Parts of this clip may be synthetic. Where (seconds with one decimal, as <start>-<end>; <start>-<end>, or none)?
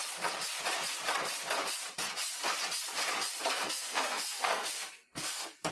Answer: 3.4-5.7